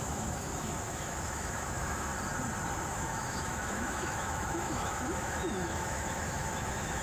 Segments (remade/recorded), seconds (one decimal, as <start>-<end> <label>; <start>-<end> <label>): 0.0-2.1 remade; 2.1-2.9 recorded; 2.9-7.0 remade

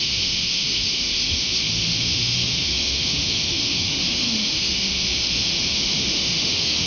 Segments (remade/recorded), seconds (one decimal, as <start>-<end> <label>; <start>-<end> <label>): 0.0-6.9 remade

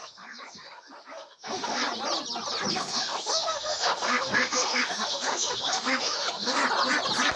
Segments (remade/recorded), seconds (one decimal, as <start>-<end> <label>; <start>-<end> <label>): 0.0-1.8 remade; 1.8-2.7 recorded; 2.7-6.6 remade; 6.6-7.4 recorded